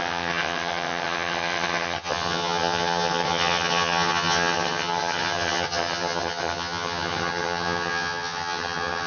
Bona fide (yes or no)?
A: no